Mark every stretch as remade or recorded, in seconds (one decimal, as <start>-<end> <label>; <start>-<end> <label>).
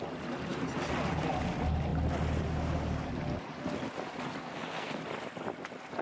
0.0-4.4 recorded; 4.4-5.0 remade; 5.0-6.0 recorded